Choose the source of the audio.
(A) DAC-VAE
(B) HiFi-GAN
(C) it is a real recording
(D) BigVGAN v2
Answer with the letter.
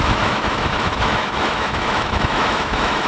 A